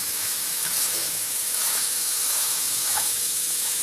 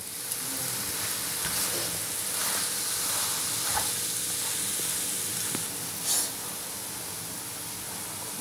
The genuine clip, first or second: second